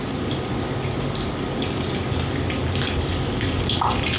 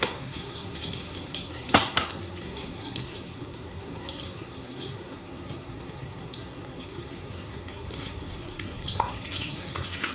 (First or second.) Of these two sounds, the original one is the first